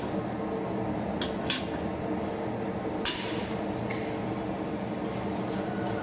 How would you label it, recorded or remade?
recorded